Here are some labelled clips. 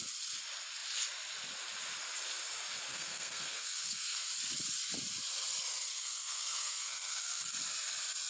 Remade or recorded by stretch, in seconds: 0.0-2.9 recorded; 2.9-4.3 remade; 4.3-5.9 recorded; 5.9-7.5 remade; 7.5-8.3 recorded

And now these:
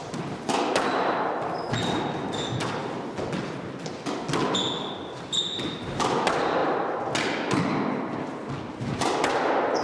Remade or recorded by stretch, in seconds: 0.0-9.8 recorded

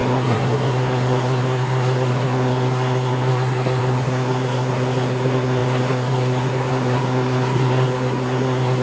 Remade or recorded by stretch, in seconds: 0.0-8.8 remade

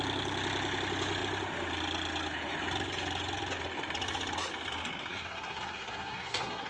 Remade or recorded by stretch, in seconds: 0.0-5.1 recorded; 5.1-6.7 remade

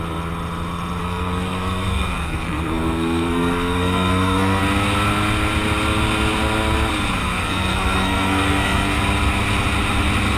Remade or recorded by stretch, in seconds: 0.0-1.0 recorded; 1.0-4.6 remade; 4.6-7.2 recorded; 7.2-9.0 remade; 9.0-10.4 recorded